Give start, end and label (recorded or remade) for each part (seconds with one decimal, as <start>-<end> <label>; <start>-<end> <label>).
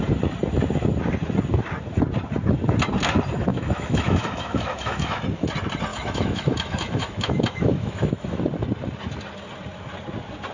0.0-3.5 recorded; 3.5-5.2 remade; 5.2-5.9 recorded; 5.9-8.4 remade; 8.4-10.5 recorded